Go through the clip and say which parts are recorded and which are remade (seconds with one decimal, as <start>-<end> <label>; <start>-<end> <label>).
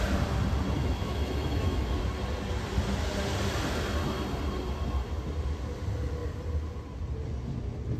0.0-0.8 recorded; 0.8-2.0 remade; 2.0-8.0 recorded